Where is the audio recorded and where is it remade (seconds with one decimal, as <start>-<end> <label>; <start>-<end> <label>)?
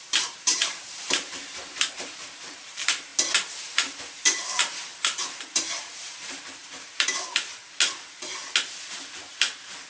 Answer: 0.0-3.1 remade; 3.1-4.0 recorded; 4.0-7.6 remade; 7.6-8.9 recorded; 8.9-9.9 remade